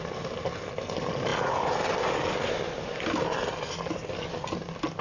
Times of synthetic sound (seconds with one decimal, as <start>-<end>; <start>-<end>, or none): none